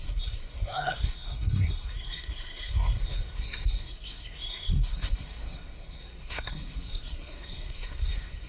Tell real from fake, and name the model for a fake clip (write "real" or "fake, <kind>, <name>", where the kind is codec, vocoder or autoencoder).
fake, codec, SNAC